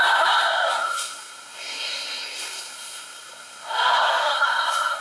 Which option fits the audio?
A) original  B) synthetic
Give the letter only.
B